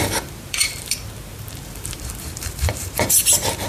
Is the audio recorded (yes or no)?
no